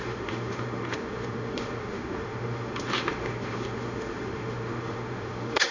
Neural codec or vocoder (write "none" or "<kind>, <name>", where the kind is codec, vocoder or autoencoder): autoencoder, DAC-VAE